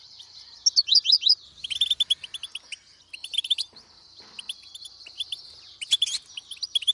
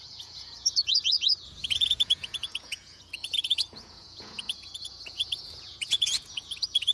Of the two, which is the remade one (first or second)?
second